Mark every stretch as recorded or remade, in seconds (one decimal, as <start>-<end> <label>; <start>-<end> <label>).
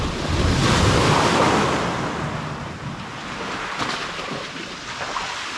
0.0-5.6 recorded